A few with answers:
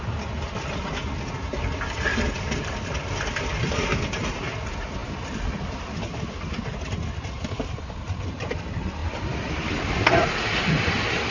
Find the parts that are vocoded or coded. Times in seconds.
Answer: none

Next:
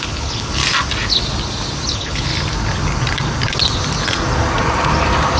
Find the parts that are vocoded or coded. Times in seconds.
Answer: 0.0-0.6 (codec, HILCodec); 1.9-2.3

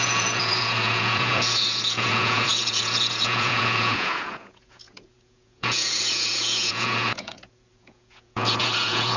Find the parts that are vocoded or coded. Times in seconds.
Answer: 0.0-9.2 (vocoder, Vocos)